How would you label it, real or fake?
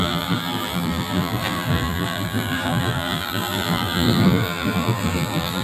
fake